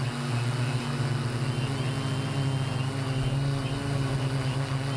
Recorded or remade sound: recorded